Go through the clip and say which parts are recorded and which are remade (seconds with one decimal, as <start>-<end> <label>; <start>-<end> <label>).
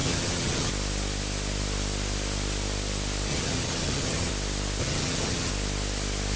0.0-0.7 remade; 0.7-3.3 recorded; 3.3-4.3 remade; 4.3-4.8 recorded; 4.8-5.5 remade; 5.5-6.4 recorded